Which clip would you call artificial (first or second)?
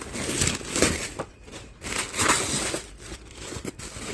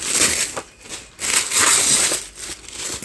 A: second